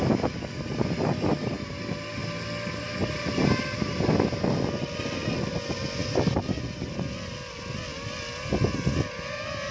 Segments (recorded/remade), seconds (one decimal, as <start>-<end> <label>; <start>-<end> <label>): 0.0-9.7 recorded